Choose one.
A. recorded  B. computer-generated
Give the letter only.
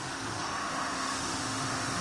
B